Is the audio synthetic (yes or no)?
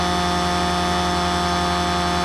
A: no